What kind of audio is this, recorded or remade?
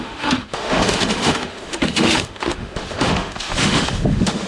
remade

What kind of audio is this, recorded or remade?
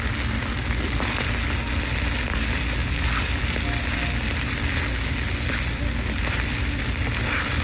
recorded